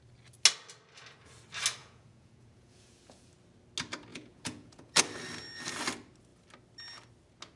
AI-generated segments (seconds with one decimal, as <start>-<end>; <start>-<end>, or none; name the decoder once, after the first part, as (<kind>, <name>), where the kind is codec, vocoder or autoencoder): 1.8-3.3 (vocoder, Vocos); 4.1-5.0